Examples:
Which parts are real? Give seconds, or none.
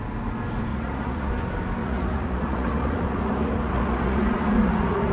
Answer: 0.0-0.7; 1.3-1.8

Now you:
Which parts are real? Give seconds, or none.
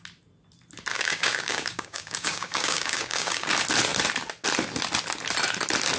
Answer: 0.0-0.9; 3.5-6.0